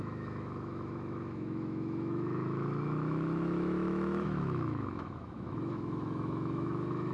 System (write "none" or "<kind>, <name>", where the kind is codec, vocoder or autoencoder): autoencoder, DAC-VAE